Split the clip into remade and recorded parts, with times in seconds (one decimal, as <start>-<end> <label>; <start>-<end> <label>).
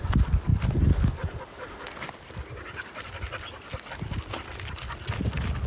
0.0-5.7 recorded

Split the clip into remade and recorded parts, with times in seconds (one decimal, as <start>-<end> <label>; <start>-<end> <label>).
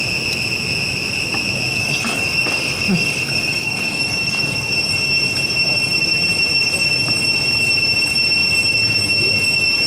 0.0-1.8 recorded; 1.8-4.7 remade; 4.7-9.9 recorded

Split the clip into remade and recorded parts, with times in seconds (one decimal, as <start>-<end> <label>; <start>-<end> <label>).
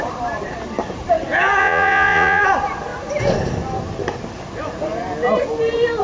0.0-1.6 recorded; 1.6-2.4 remade; 2.4-6.0 recorded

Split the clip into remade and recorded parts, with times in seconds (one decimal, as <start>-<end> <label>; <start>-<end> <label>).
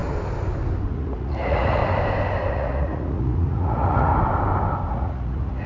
0.0-0.9 recorded; 0.9-1.8 remade; 1.8-2.5 recorded; 2.5-4.1 remade; 4.1-4.9 recorded; 4.9-5.7 remade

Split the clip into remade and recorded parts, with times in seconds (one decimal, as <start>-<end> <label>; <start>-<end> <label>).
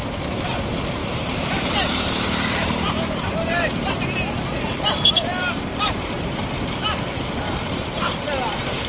0.0-1.0 recorded; 1.0-6.2 remade; 6.2-8.9 recorded